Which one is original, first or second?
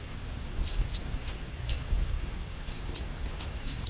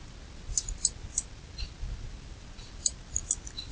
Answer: second